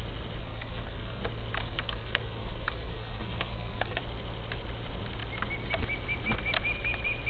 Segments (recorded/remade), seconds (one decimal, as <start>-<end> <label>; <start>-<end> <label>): 0.0-0.4 recorded; 0.4-1.2 remade; 1.2-1.6 recorded; 1.6-4.0 remade; 4.0-7.3 recorded